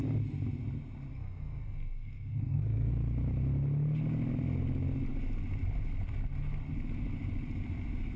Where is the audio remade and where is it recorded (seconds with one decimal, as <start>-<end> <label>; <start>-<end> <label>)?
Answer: 0.0-1.1 recorded; 1.1-2.9 remade; 2.9-8.2 recorded